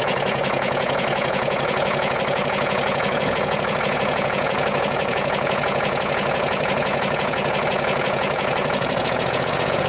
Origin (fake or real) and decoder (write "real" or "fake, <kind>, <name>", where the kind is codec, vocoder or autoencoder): fake, vocoder, Vocos